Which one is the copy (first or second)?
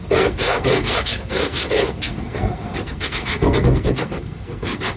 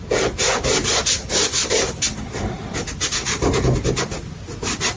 first